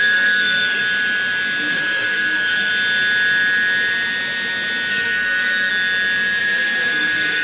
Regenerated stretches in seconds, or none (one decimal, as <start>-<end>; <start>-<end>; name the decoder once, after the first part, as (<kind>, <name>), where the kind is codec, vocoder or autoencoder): 0.0-0.8 (codec, SNAC); 1.7-2.7; 4.9-5.7; 6.4-7.4